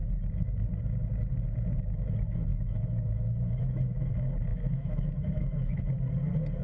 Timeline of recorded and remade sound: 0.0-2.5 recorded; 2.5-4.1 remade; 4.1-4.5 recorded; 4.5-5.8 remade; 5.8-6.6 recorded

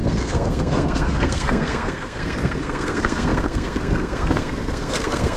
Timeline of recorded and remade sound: 0.0-5.4 remade